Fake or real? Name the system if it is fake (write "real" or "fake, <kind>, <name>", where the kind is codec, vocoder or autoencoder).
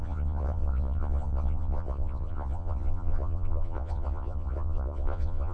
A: fake, vocoder, Vocos